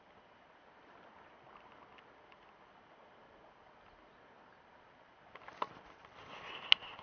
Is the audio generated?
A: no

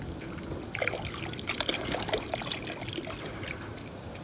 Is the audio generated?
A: no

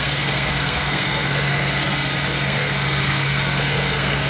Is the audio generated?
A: yes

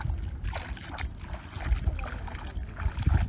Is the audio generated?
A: no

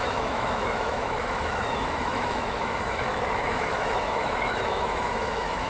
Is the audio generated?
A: yes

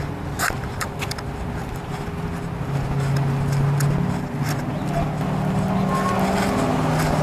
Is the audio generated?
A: no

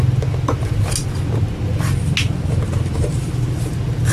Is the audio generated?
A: no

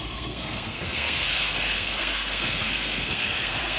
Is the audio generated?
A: yes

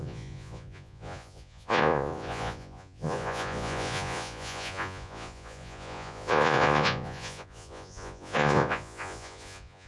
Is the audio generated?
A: yes